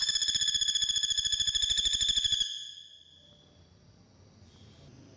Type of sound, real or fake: real